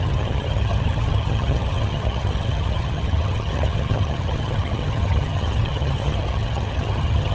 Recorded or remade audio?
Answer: remade